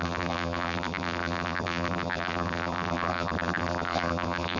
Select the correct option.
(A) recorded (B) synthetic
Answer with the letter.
B